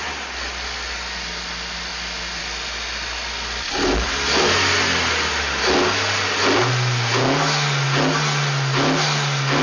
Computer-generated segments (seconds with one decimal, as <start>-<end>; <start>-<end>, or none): none